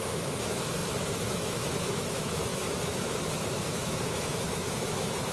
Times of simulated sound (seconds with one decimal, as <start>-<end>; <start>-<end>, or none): 0.0-5.3